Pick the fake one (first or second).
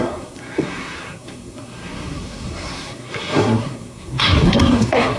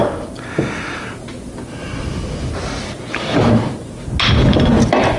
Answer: first